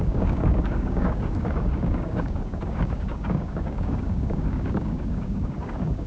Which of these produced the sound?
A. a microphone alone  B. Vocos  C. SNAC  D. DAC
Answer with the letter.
D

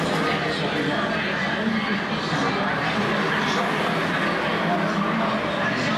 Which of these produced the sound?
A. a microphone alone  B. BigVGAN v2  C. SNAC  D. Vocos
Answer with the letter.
A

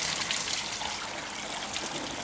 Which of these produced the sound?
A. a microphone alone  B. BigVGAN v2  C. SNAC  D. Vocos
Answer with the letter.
A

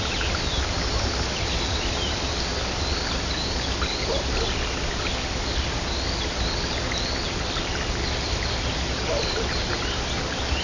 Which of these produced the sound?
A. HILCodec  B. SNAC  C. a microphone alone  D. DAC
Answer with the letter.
C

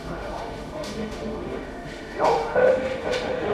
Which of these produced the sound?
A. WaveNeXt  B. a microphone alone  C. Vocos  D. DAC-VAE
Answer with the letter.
D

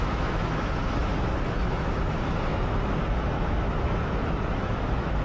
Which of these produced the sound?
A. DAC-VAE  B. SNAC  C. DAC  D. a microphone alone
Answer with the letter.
A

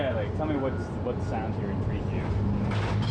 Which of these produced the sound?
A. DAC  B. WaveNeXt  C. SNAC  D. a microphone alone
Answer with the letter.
D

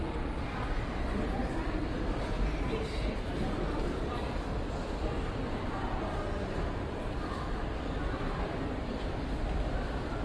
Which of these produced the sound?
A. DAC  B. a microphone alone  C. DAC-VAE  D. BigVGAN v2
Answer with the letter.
D